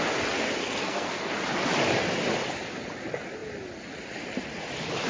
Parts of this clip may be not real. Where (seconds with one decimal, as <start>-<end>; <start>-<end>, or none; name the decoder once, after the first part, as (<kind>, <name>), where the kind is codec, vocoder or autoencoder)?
0.6-1.3 (codec, SNAC)